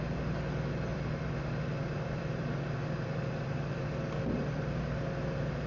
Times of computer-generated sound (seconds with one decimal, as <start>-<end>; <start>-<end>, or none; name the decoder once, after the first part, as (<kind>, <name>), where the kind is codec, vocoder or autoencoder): 0.9-1.4 (vocoder, BigVGAN v2); 1.8-4.6